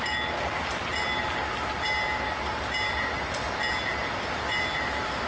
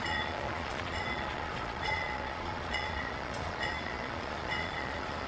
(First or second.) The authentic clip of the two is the first